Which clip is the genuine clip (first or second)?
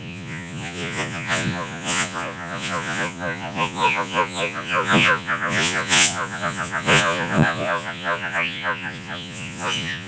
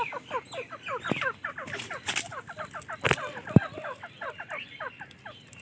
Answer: second